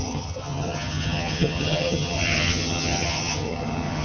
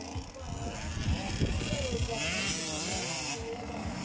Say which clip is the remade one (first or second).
first